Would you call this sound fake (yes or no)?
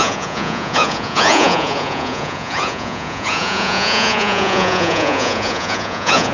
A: yes